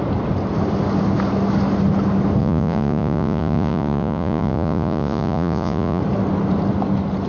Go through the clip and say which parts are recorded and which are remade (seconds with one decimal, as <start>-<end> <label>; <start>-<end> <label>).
0.0-2.4 recorded; 2.4-6.0 remade; 6.0-7.3 recorded